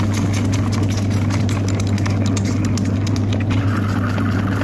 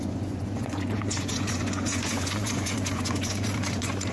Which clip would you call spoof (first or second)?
second